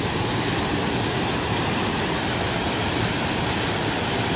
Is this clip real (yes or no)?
yes